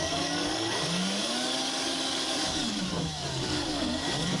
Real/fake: fake